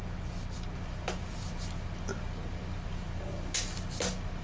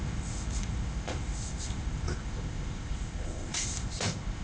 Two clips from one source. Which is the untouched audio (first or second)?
first